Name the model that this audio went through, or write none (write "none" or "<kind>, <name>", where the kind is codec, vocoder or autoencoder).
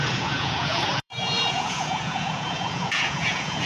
vocoder, Vocos